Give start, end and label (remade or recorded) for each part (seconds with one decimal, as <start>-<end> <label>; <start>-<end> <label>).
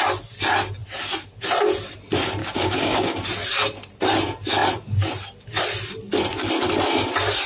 0.0-2.4 recorded; 2.4-3.2 remade; 3.2-7.5 recorded